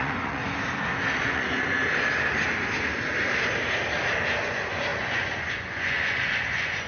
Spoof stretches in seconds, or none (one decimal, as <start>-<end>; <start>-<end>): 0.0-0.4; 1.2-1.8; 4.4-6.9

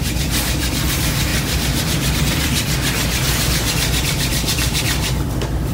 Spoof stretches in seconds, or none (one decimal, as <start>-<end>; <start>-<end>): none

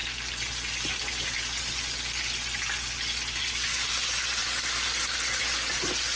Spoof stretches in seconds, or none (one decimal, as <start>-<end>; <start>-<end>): none